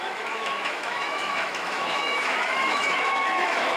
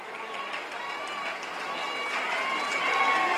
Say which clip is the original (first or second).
second